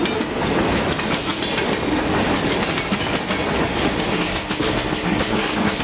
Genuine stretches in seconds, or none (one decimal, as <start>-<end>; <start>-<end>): 0.0-4.1